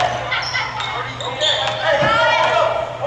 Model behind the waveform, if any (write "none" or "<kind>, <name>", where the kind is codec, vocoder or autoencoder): none